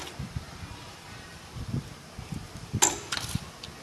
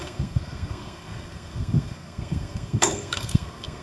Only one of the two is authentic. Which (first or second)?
first